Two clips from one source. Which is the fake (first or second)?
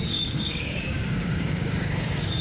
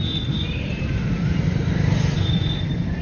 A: first